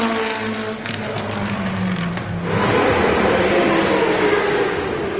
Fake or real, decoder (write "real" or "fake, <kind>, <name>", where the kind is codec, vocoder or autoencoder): real